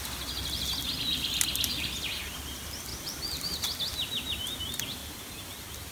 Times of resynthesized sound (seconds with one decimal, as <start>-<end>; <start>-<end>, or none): none